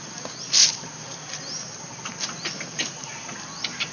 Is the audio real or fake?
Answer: real